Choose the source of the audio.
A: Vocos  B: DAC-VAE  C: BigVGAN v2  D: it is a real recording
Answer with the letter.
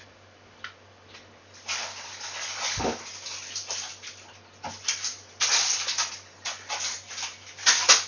D